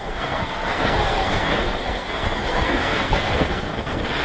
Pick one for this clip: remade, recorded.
remade